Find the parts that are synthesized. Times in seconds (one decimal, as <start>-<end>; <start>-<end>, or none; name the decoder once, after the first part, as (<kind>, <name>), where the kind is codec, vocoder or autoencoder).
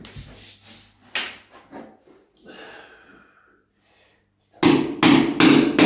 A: none